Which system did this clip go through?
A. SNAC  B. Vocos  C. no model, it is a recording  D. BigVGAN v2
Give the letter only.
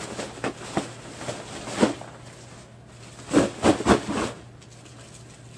C